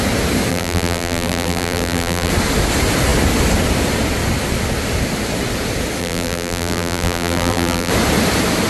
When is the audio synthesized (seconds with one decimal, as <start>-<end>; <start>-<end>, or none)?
0.5-2.3; 6.0-7.9